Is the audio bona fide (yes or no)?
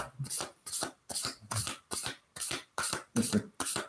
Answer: no